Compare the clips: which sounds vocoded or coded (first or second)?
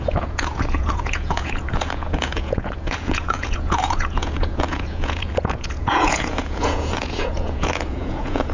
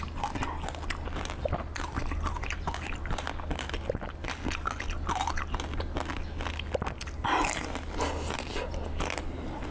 first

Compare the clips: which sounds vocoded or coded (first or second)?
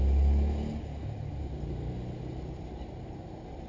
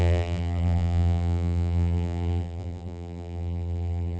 second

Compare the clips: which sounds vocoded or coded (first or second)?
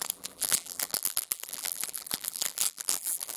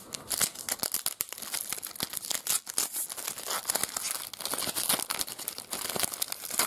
first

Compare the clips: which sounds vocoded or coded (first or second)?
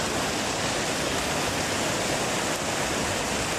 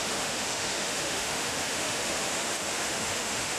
second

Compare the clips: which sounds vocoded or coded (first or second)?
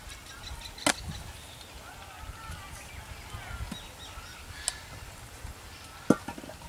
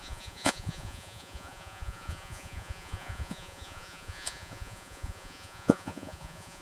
second